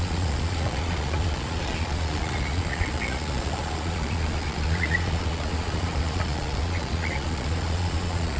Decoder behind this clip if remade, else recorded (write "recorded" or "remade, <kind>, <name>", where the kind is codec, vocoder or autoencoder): remade, vocoder, Vocos